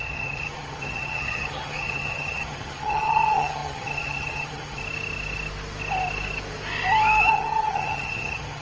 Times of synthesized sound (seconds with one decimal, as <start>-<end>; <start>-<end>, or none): 0.0-4.8; 7.3-8.6